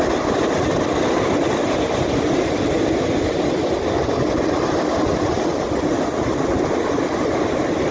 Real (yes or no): yes